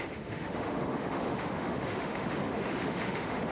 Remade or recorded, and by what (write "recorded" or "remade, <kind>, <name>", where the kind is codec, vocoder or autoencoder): remade, autoencoder, DAC-VAE